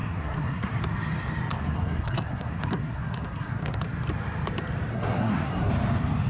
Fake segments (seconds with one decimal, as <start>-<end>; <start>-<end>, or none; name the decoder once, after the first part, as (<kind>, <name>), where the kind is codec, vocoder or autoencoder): 0.0-0.8 (codec, SNAC); 1.5-3.8; 4.9-5.7